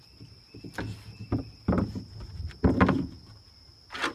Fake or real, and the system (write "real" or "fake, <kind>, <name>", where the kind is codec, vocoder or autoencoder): real